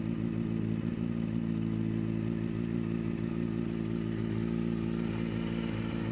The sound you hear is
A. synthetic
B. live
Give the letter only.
B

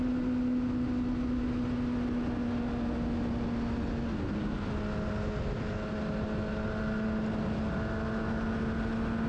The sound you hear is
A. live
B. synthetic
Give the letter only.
A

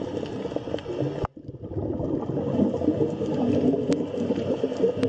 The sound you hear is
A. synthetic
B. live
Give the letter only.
B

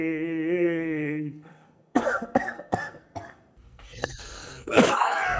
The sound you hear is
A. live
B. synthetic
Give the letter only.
B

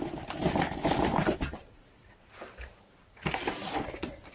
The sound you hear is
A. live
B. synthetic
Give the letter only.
A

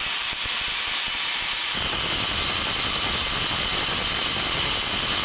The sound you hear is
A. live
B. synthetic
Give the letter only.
A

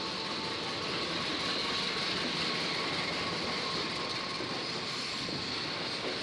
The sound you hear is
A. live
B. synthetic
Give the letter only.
A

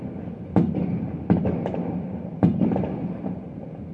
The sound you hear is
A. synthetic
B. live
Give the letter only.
B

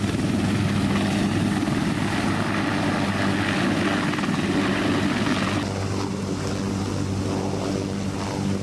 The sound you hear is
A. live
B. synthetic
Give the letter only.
A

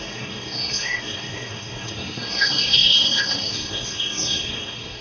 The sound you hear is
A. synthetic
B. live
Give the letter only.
A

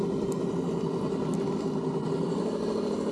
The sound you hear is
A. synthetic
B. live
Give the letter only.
B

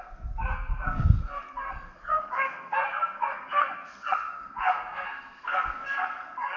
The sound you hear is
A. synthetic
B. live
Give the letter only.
A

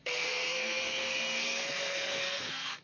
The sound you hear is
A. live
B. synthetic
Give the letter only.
B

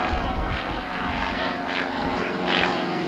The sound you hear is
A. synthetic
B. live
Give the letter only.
A